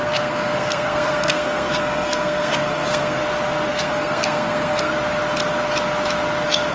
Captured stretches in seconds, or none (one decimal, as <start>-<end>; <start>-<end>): 3.2-3.7; 4.9-6.7